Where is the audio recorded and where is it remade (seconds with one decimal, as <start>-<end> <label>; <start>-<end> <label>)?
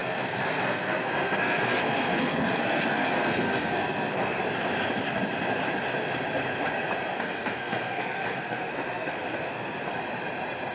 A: 0.0-4.4 remade; 4.4-7.1 recorded; 7.1-9.9 remade; 9.9-10.7 recorded